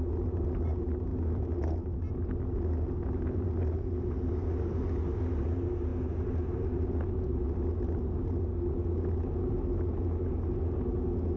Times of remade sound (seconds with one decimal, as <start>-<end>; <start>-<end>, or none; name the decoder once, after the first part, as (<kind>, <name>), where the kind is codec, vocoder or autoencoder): none